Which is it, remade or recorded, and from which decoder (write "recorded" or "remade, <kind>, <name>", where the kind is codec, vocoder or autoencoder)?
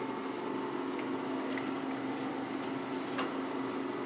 recorded